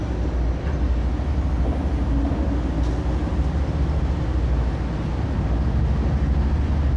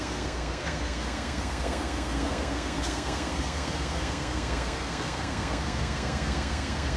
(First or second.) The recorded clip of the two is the first